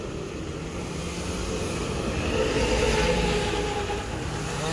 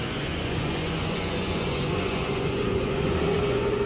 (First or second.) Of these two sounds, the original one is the first